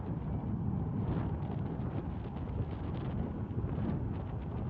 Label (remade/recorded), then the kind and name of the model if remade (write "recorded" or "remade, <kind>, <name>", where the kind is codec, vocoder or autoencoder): recorded